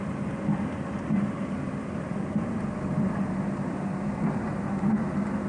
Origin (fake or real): real